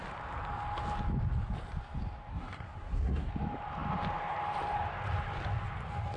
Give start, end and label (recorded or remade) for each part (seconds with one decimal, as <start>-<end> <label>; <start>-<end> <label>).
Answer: 0.0-2.3 recorded; 2.3-3.3 remade; 3.3-6.2 recorded